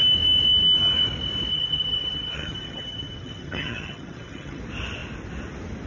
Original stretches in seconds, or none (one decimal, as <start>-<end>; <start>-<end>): 0.0-1.5; 4.6-5.9